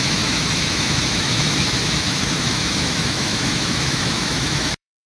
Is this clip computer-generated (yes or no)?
yes